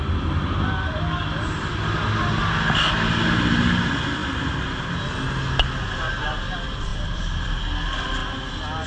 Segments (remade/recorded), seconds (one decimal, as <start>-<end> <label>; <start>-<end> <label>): 0.0-6.9 recorded; 6.9-7.6 remade; 7.6-8.9 recorded